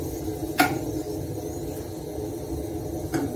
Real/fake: real